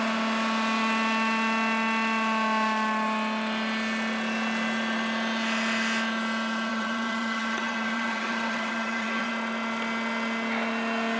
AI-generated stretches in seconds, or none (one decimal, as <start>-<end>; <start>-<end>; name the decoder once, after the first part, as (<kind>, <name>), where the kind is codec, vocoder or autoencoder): 6.7-9.3 (vocoder, HiFi-GAN)

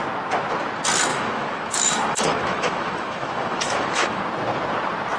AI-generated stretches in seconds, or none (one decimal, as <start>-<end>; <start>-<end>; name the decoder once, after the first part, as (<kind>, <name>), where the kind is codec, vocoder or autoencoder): 1.1-4.2 (autoencoder, DAC-VAE)

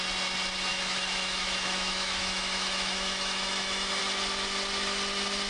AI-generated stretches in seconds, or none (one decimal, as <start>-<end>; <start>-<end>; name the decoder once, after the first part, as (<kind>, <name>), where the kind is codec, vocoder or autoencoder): 0.7-4.0 (autoencoder, DAC-VAE)

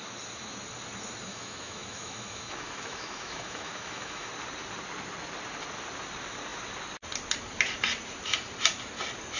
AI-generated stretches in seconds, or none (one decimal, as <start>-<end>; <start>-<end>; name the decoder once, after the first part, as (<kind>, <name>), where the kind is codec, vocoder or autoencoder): 1.3-4.3 (autoencoder, DAC-VAE)

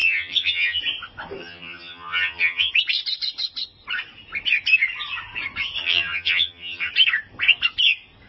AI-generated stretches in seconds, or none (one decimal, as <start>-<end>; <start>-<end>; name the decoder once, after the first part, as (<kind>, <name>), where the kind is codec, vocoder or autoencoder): 0.0-0.8 (vocoder, HiFi-GAN); 1.4-2.7; 5.8-6.9

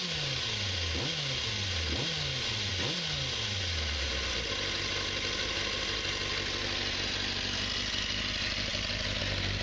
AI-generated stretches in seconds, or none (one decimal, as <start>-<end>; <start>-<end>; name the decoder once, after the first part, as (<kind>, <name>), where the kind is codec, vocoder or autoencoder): none

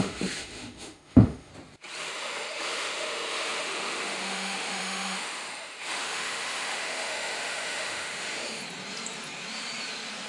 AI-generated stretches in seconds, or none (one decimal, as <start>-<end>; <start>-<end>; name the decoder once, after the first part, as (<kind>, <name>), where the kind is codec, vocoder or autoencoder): 0.0-1.5 (autoencoder, DAC-VAE); 2.1-8.6